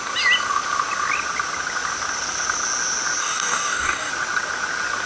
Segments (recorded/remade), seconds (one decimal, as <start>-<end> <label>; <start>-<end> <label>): 0.0-3.2 recorded; 3.2-4.1 remade; 4.1-5.1 recorded